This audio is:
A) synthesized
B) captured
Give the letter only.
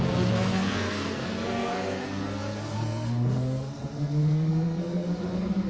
A